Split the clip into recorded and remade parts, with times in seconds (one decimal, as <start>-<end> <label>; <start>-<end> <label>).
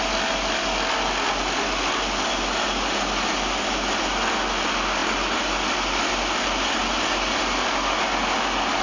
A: 0.0-8.8 recorded